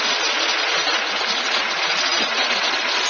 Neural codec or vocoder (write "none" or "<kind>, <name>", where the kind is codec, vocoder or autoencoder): none